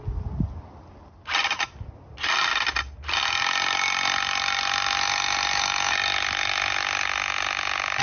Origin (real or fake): real